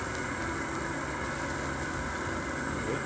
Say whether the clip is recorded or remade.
recorded